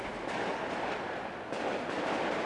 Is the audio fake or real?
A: real